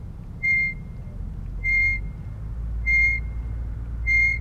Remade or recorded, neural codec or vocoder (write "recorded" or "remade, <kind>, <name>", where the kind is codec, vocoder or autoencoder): recorded